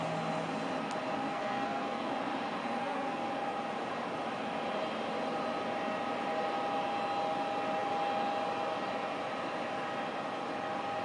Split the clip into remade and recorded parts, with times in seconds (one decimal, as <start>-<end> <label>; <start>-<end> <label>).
0.0-1.3 recorded; 1.3-2.1 remade; 2.1-2.8 recorded; 2.8-3.3 remade; 3.3-11.0 recorded